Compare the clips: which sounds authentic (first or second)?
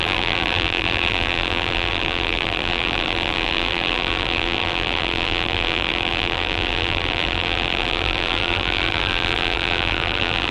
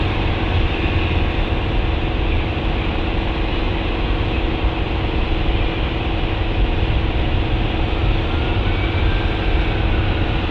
second